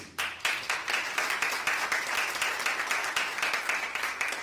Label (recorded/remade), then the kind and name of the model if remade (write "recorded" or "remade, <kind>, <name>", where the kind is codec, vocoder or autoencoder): recorded